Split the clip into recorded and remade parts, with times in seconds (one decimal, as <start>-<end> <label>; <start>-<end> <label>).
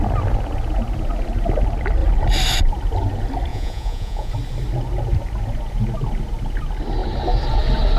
0.0-3.5 recorded; 3.5-4.3 remade; 4.3-8.0 recorded